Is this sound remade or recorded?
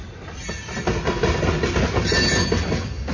recorded